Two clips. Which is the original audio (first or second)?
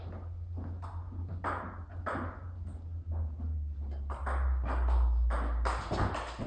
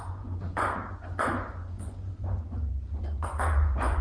first